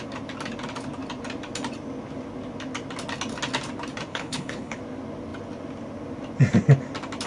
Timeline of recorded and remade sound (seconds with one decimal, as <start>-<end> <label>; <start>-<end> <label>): 0.0-4.1 recorded; 4.1-4.8 remade; 4.8-7.3 recorded